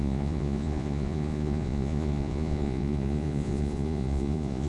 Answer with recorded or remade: remade